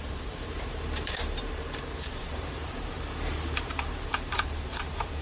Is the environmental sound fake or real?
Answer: fake